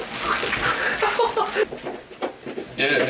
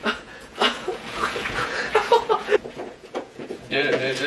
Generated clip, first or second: second